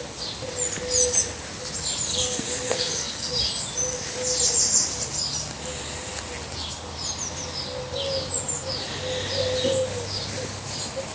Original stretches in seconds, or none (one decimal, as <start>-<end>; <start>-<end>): 0.0-2.1; 3.3-11.1